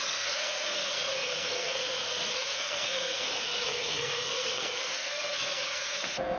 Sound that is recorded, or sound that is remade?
remade